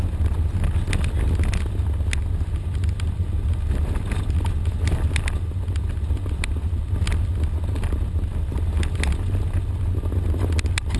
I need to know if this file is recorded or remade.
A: recorded